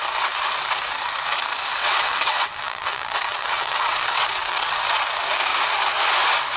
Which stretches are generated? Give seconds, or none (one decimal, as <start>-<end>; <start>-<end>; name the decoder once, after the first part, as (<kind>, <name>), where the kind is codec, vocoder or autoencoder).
1.8-4.8 (vocoder, WaveNeXt)

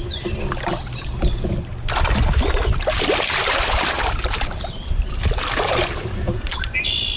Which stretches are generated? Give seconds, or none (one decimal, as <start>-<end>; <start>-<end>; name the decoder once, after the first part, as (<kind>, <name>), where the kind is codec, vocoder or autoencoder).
1.7-4.0 (vocoder, BigVGAN v2)